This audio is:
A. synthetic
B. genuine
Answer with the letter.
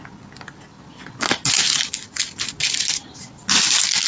B